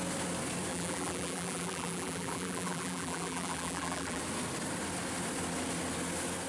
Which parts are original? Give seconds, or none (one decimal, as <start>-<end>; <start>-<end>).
0.0-0.7; 4.2-6.5